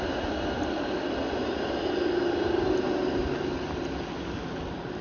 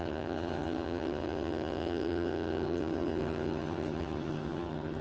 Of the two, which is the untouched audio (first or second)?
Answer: first